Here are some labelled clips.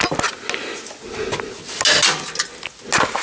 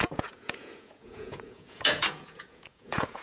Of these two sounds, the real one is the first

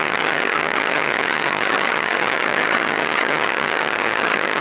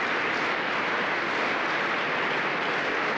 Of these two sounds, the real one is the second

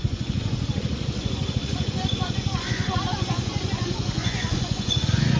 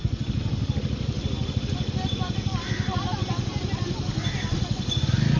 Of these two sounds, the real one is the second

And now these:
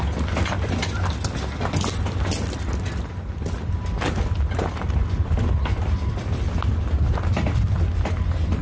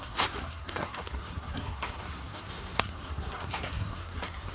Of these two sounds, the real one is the first